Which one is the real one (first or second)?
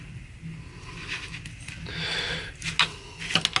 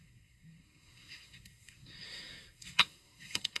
first